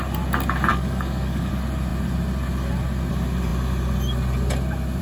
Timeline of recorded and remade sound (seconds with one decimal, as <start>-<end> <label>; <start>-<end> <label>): 0.0-0.7 recorded; 0.7-1.5 remade; 1.5-5.0 recorded